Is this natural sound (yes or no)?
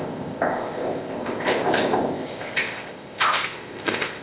no